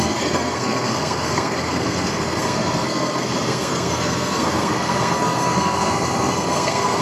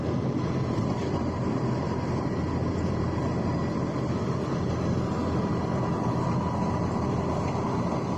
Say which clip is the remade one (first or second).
first